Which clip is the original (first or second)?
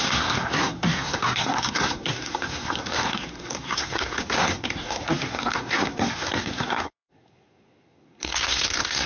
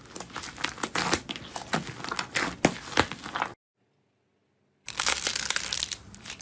second